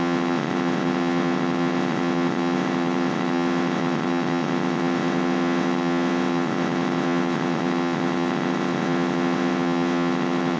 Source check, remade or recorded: remade